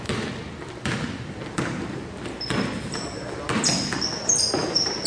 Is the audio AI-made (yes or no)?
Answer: no